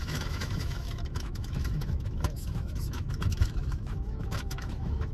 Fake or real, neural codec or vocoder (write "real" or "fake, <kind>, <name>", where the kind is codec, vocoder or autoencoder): fake, autoencoder, DAC-VAE